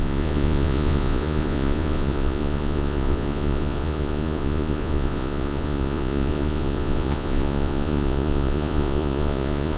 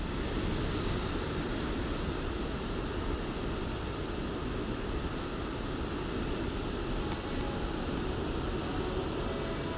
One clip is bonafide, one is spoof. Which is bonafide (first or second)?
second